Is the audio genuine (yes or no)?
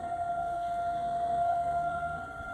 no